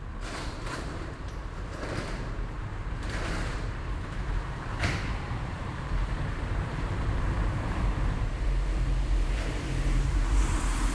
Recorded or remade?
remade